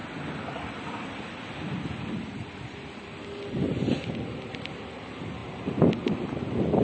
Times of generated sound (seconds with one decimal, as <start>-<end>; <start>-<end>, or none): none